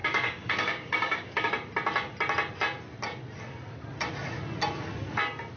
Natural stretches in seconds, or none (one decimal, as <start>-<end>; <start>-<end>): 1.5-5.6